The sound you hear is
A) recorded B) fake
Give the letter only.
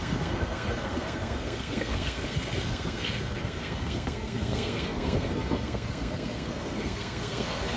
B